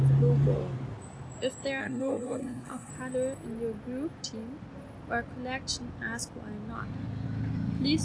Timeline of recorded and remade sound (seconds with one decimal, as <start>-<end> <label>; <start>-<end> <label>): 0.0-1.8 recorded; 1.8-2.9 remade; 2.9-8.0 recorded